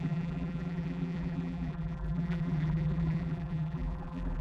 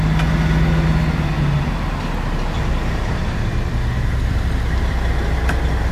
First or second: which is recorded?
second